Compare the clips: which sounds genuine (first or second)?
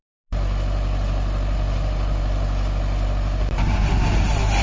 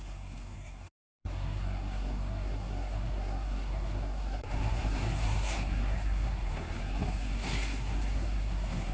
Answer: first